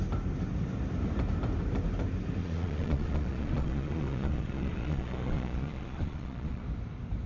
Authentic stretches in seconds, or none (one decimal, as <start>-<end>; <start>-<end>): 0.0-2.4; 6.6-7.3